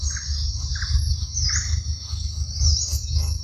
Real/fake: real